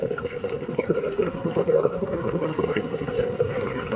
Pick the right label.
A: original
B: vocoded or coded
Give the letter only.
B